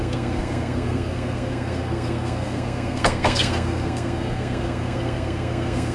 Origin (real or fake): fake